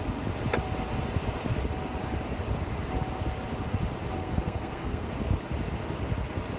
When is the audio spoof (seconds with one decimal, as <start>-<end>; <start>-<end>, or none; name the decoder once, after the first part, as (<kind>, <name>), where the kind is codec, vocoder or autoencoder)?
4.2-5.1 (codec, SNAC)